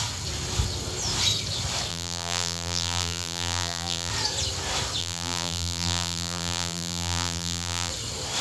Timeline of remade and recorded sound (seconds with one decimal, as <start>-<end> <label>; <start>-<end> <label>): 0.0-1.9 recorded; 1.9-4.1 remade; 4.1-5.0 recorded; 5.0-7.9 remade; 7.9-8.4 recorded